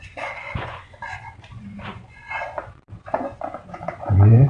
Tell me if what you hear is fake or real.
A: fake